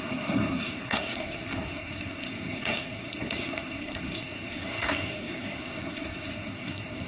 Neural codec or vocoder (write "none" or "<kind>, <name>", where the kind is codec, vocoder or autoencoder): codec, SNAC